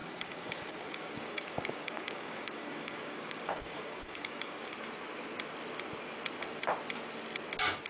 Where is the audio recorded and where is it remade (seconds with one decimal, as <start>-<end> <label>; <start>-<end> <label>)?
0.0-4.7 remade; 4.7-7.9 recorded